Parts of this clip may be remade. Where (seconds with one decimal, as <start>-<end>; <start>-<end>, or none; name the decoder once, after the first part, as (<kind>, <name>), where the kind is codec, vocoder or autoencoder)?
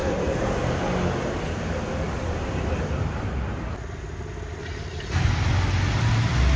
0.0-4.0 (vocoder, BigVGAN v2); 4.6-6.1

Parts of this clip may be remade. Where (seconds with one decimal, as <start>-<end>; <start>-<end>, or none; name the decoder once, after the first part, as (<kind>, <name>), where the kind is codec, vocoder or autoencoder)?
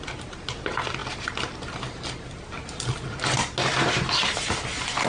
none